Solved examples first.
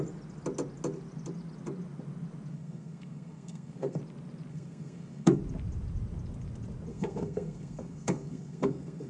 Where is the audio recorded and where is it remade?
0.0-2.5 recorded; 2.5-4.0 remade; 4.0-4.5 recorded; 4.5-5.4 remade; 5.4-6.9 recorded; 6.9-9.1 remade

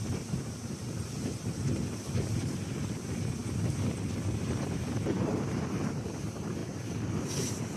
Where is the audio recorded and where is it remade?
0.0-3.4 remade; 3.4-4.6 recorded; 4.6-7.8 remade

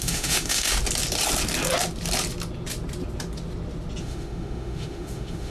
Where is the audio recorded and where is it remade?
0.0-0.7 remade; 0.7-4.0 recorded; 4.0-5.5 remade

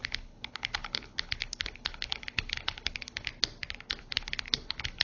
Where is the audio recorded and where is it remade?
0.0-3.3 remade; 3.3-4.0 recorded; 4.0-5.0 remade

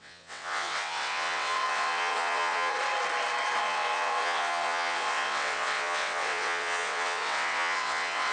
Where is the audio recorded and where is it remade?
0.0-2.7 remade; 2.7-3.6 recorded; 3.6-8.3 remade

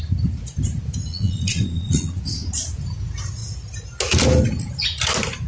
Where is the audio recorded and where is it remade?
0.0-1.1 recorded; 1.1-2.2 remade; 2.2-5.5 recorded

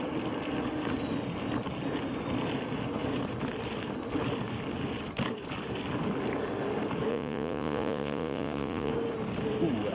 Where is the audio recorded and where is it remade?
0.0-7.1 recorded; 7.1-8.9 remade; 8.9-9.9 recorded